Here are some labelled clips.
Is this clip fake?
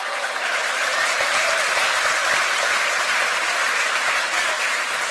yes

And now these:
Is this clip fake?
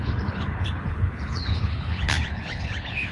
yes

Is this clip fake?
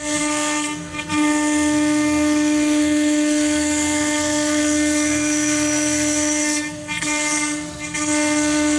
yes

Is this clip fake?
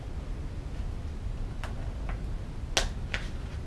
no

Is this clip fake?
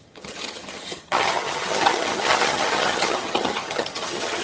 yes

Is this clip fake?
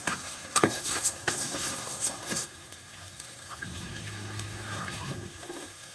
yes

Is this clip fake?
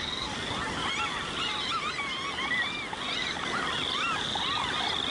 no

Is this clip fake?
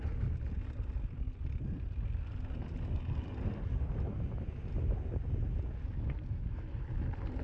no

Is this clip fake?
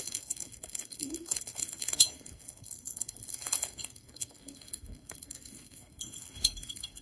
yes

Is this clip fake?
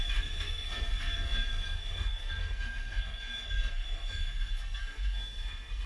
yes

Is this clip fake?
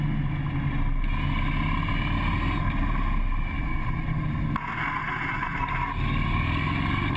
no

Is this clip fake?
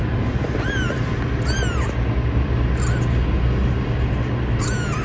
no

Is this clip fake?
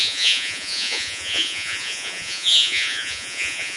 yes